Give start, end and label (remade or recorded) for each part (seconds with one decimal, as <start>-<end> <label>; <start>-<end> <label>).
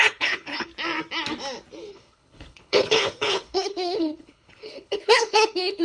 0.0-0.7 remade; 0.7-1.9 recorded; 1.9-5.8 remade